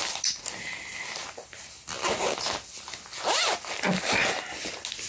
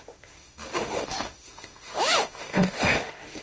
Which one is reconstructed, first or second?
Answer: second